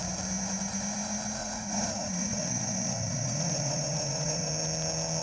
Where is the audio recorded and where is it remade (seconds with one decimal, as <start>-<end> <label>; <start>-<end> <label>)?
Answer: 0.0-1.4 recorded; 1.4-4.5 remade; 4.5-5.2 recorded